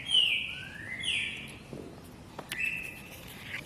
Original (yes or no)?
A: yes